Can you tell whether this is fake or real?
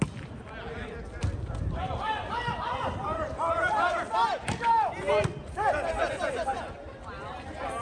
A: real